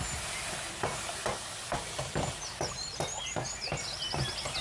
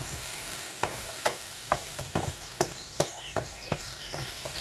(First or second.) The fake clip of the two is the second